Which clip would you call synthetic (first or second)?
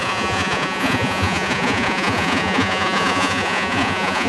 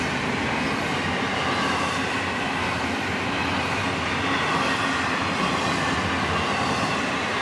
first